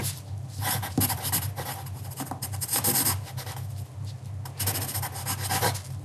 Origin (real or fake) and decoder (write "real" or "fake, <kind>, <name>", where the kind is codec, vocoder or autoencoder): real